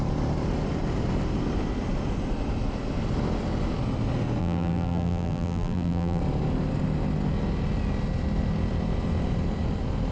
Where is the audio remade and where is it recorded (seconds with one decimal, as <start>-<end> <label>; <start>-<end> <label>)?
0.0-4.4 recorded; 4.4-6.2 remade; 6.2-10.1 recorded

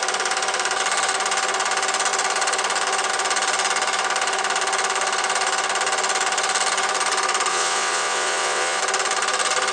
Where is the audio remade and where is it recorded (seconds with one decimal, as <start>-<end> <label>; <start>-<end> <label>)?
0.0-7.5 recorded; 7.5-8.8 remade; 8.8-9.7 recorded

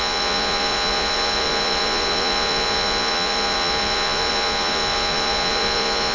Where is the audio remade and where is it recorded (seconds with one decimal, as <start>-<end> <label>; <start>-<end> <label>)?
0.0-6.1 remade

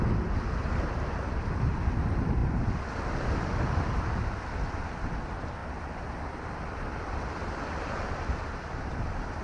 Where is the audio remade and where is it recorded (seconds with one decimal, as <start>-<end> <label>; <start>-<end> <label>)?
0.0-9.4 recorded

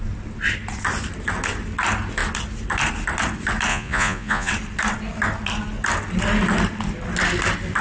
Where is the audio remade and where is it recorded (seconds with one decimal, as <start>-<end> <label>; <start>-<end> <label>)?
0.0-3.7 recorded; 3.7-4.5 remade; 4.5-7.8 recorded